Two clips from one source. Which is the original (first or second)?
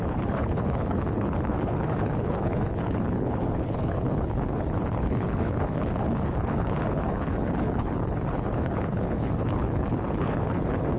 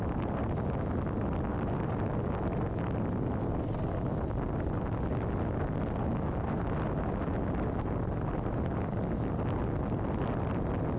second